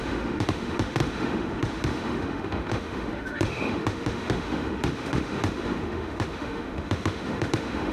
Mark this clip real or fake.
fake